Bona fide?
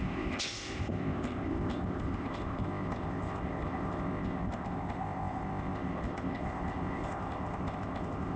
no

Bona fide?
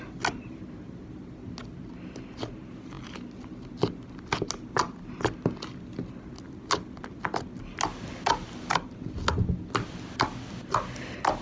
yes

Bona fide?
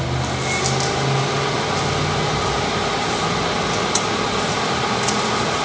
yes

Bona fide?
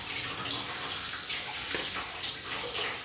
yes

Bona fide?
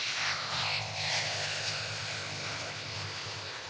no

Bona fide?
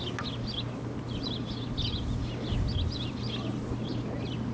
yes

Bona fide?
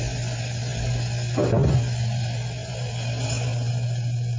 yes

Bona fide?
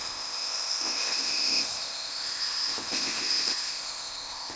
no